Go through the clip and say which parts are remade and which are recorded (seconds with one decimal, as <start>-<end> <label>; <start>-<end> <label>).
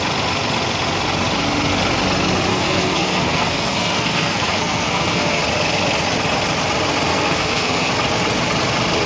0.0-2.5 recorded; 2.5-5.4 remade; 5.4-7.1 recorded; 7.1-7.9 remade; 7.9-9.1 recorded